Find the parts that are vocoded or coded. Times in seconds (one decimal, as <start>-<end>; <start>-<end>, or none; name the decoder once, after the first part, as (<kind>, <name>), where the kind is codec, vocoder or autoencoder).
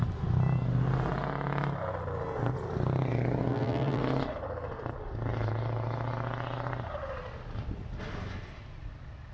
3.5-4.0 (vocoder, BigVGAN v2)